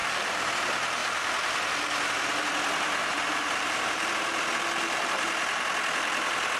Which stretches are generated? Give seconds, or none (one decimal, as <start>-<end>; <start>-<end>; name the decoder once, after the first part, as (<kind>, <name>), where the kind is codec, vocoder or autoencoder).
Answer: 0.0-0.5 (vocoder, BigVGAN v2); 3.0-4.1

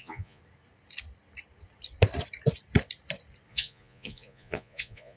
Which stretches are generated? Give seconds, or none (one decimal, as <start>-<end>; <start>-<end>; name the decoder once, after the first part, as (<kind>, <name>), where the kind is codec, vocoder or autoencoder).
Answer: 0.0-0.4 (vocoder, Vocos); 3.5-5.2

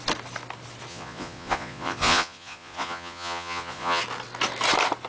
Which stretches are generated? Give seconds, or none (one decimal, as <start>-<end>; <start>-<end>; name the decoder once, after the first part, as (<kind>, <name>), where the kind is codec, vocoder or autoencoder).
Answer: 0.9-4.0 (vocoder, Vocos)

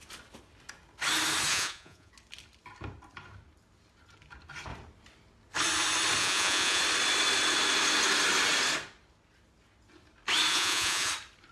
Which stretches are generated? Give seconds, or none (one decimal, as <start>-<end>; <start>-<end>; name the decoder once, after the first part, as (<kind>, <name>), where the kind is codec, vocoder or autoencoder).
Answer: 1.5-2.1 (vocoder, Vocos); 6.2-6.8; 10.5-11.1

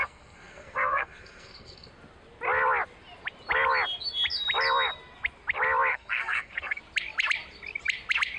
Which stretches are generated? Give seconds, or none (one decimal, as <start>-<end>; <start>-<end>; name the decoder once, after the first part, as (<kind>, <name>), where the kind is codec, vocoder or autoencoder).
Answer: 0.0-1.9 (codec, SNAC); 5.9-6.8

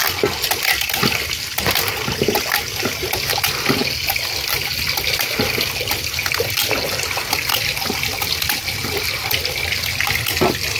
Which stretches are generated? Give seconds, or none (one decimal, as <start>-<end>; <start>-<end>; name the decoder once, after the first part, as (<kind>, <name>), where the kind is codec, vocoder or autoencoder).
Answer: none

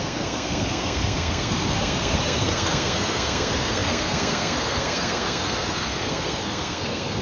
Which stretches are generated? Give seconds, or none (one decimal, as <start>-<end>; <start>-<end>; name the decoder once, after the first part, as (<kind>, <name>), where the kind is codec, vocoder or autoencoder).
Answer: 0.0-7.2 (codec, SNAC)